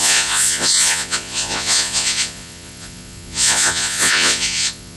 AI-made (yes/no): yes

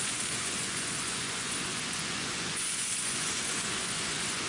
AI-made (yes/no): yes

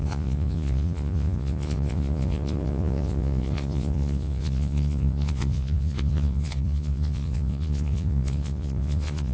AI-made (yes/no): yes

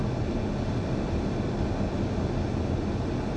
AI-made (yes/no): no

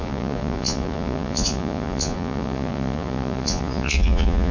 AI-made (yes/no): yes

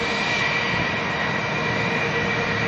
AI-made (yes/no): no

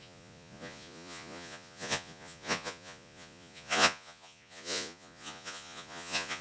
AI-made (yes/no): yes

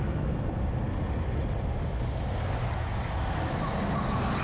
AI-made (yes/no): no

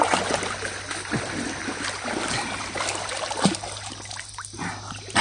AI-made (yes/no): no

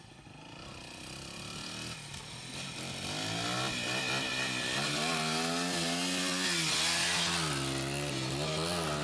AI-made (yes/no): no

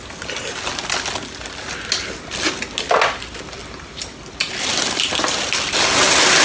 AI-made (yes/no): no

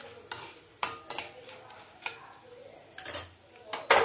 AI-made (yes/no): no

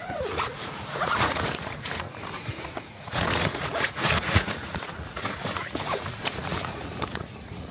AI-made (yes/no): yes